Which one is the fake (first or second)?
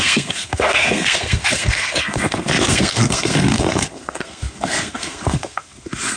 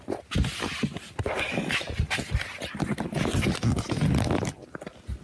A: first